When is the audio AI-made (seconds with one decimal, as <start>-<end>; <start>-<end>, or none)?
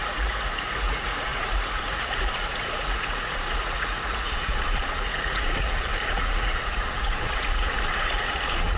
0.0-8.8